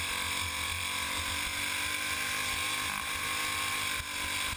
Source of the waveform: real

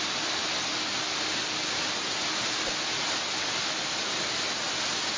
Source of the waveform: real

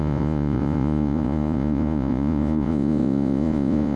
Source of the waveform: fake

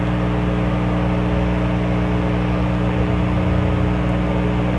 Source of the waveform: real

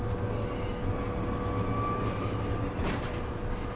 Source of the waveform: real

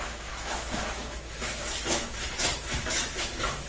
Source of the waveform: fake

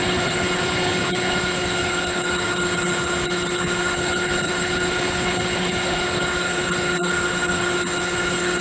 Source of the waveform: fake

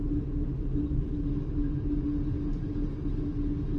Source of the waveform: real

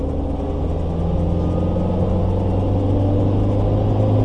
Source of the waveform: real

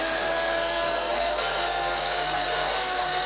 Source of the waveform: fake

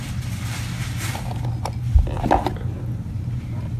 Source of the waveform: real